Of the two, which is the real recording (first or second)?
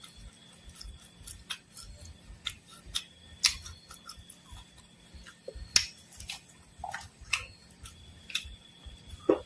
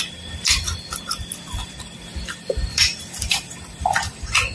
first